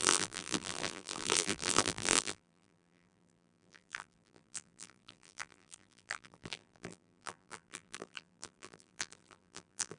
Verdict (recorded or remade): remade